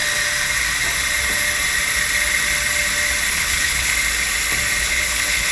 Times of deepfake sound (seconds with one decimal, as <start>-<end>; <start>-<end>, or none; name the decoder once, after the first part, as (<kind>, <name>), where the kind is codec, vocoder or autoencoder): 3.3-3.9 (codec, HILCodec); 4.8-5.5